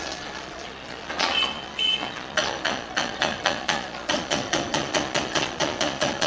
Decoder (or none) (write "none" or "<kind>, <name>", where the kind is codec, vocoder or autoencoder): vocoder, Vocos